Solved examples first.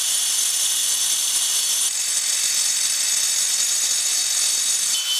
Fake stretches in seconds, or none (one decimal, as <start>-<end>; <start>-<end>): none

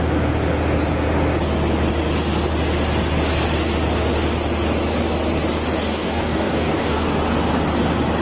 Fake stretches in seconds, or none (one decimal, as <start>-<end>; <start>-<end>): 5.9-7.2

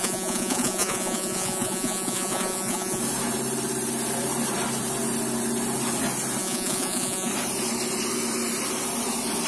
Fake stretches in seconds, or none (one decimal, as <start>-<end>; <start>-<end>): 0.0-3.0; 6.4-7.3

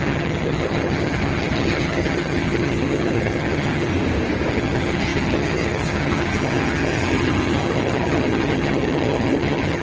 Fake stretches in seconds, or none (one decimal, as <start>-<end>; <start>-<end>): 0.0-3.9; 4.5-9.8

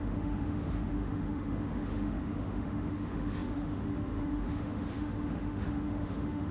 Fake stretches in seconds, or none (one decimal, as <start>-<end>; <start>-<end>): 0.0-6.5